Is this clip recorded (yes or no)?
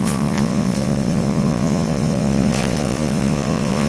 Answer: no